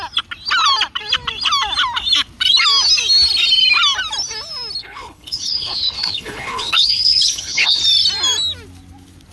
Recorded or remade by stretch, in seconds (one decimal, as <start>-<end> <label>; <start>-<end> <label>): 0.0-4.8 recorded; 4.8-7.8 remade; 7.8-9.3 recorded

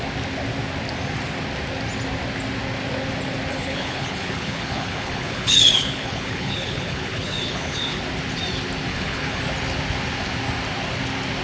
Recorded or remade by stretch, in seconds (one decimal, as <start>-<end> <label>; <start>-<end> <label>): 0.0-3.5 recorded; 3.5-8.0 remade; 8.0-8.9 recorded; 8.9-9.4 remade; 9.4-11.4 recorded

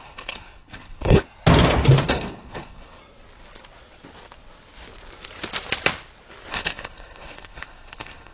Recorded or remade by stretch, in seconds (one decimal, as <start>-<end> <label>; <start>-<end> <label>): 0.0-1.2 remade; 1.2-2.1 recorded; 2.1-3.0 remade; 3.0-6.5 recorded; 6.5-8.3 remade

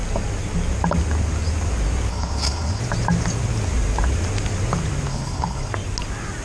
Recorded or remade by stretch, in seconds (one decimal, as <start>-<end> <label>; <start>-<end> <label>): 0.0-2.1 recorded; 2.1-2.8 remade; 2.8-5.1 recorded; 5.1-5.7 remade; 5.7-6.4 recorded

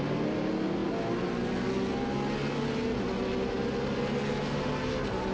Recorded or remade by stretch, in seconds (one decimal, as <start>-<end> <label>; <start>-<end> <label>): 0.0-5.3 recorded

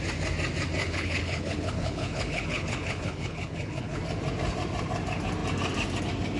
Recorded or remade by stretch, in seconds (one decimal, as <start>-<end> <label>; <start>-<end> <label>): 0.0-0.8 recorded; 0.8-4.0 remade; 4.0-6.4 recorded